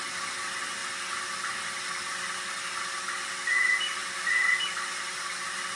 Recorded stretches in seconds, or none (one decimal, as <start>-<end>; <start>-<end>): 0.0-5.8